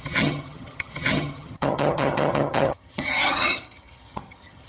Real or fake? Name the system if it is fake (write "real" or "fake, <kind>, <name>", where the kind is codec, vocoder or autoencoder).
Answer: fake, vocoder, HiFi-GAN